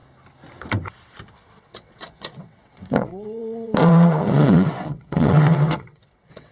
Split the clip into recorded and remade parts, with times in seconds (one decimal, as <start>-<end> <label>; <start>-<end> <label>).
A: 0.0-1.5 recorded; 1.5-6.5 remade

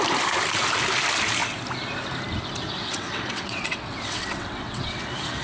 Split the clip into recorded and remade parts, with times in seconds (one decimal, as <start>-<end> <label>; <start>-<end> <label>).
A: 0.0-2.8 recorded; 2.8-5.0 remade; 5.0-5.4 recorded

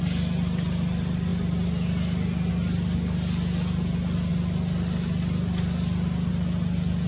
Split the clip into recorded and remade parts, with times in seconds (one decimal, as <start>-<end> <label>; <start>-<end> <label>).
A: 0.0-7.1 recorded

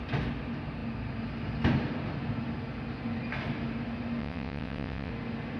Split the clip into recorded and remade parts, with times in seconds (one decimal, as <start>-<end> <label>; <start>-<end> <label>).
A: 0.0-4.2 recorded; 4.2-5.1 remade; 5.1-5.6 recorded

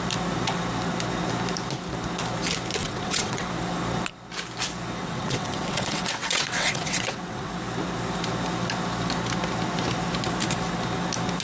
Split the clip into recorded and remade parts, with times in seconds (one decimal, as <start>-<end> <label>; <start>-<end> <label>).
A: 0.0-2.8 recorded; 2.8-3.5 remade; 3.5-5.0 recorded; 5.0-7.5 remade; 7.5-11.4 recorded

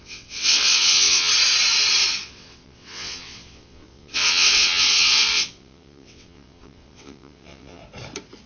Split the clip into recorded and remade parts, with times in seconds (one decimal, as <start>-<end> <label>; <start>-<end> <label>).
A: 0.0-1.3 remade; 1.3-2.2 recorded; 2.2-7.8 remade; 7.8-8.5 recorded

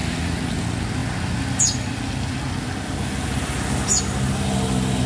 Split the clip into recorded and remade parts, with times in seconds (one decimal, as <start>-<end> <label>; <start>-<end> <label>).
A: 0.0-5.1 recorded